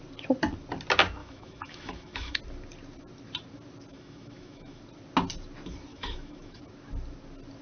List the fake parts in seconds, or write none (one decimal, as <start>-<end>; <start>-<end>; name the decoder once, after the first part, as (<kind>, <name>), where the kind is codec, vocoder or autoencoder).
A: 1.2-2.4 (autoencoder, DAC-VAE); 3.9-4.8; 5.9-6.6